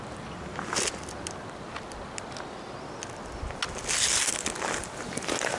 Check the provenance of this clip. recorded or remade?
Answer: recorded